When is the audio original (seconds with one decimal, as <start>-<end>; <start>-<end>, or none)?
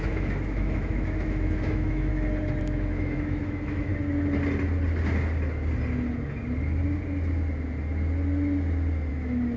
2.1-2.6; 3.9-9.1